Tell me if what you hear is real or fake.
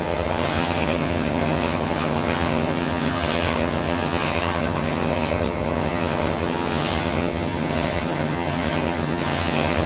fake